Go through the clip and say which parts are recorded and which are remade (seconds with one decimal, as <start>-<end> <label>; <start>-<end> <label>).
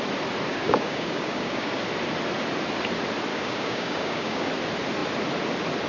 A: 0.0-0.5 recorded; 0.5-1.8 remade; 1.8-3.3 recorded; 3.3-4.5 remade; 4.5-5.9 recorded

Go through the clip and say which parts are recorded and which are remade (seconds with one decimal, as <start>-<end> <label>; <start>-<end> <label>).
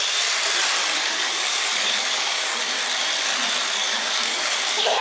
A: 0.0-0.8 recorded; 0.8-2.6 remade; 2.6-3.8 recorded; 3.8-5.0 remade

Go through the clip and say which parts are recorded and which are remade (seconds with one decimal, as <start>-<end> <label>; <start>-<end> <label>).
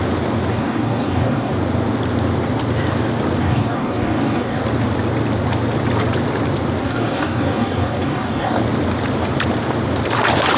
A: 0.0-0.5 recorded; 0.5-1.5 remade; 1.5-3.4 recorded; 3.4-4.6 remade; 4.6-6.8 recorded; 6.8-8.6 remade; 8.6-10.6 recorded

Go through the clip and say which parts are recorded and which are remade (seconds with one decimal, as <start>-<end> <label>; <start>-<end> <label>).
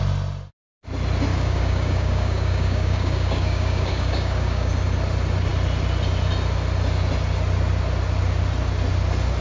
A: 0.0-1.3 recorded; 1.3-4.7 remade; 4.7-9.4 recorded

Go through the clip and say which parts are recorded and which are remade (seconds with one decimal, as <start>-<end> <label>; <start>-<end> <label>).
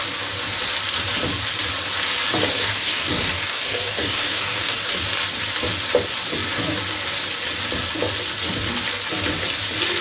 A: 0.0-2.5 recorded; 2.5-5.0 remade; 5.0-10.0 recorded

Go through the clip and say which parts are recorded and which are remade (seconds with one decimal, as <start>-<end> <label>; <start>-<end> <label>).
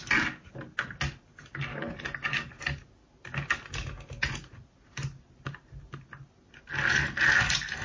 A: 0.0-1.7 recorded; 1.7-2.5 remade; 2.5-7.8 recorded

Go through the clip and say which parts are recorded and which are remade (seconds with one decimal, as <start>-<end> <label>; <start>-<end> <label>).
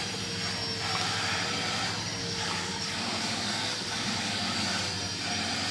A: 0.0-2.2 recorded; 2.2-4.8 remade; 4.8-5.7 recorded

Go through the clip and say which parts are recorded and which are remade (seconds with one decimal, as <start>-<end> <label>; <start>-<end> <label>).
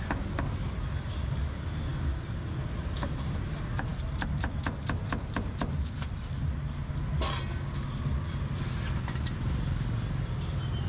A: 0.0-10.9 recorded